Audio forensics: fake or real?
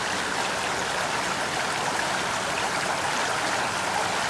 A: real